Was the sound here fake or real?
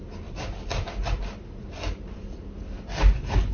real